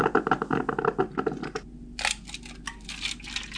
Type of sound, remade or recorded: recorded